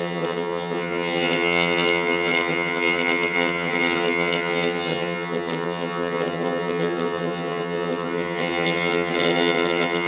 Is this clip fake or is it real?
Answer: fake